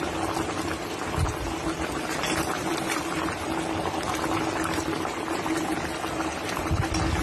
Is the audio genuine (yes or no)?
yes